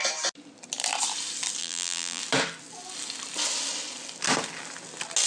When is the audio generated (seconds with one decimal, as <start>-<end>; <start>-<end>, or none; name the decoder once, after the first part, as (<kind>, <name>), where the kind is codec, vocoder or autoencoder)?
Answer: 1.6-2.2 (vocoder, BigVGAN v2)